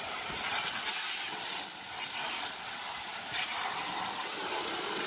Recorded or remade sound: recorded